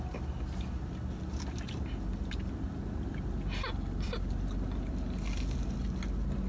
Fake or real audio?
real